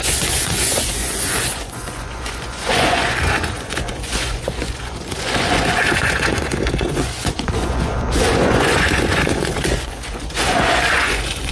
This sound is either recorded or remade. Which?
remade